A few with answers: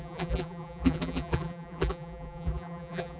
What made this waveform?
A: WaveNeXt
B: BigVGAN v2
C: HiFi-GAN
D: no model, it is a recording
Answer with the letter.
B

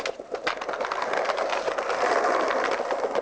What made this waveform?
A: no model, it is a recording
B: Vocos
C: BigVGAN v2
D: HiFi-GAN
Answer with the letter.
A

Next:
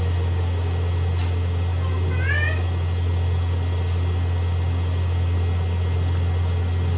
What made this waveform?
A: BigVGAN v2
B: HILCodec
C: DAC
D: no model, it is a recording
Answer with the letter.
D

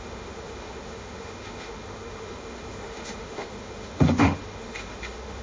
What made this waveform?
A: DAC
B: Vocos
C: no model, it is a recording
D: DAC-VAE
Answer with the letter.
D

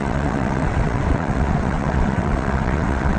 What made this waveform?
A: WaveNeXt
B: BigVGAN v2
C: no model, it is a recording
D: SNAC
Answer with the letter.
A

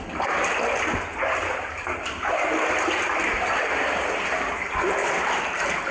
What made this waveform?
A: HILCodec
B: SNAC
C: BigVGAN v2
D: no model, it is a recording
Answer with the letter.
D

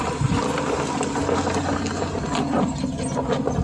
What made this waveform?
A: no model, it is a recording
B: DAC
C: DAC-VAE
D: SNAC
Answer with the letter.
A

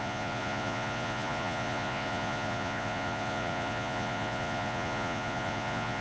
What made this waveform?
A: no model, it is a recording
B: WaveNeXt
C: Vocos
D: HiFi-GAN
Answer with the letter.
C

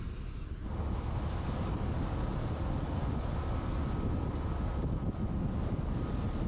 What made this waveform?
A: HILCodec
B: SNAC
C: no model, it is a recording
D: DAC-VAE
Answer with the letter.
C